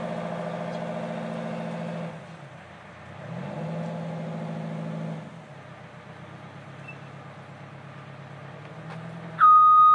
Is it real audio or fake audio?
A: real